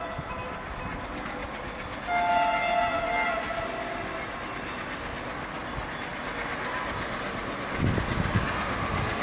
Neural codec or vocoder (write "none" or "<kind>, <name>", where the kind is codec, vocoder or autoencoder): none